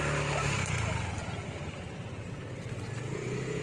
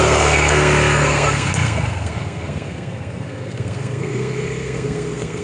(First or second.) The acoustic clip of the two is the first